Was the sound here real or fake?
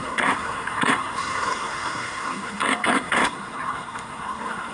fake